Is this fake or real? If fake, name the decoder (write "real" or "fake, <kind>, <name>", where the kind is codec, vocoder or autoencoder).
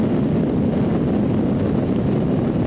real